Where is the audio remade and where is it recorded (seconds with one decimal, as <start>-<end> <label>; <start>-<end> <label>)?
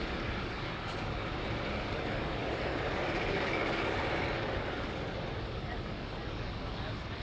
0.0-1.2 remade; 1.2-1.7 recorded; 1.7-7.2 remade